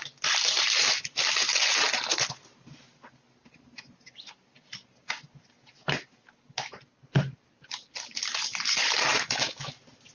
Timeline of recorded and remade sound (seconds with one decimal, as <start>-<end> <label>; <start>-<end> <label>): 0.0-9.1 recorded; 9.1-9.7 remade; 9.7-10.1 recorded